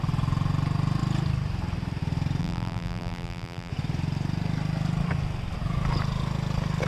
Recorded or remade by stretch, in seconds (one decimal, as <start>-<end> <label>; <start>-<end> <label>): 0.0-2.4 recorded; 2.4-3.7 remade; 3.7-6.9 recorded